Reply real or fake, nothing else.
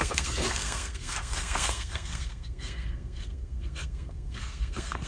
fake